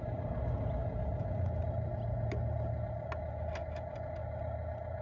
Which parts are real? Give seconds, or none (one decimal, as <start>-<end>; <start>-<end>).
0.0-5.0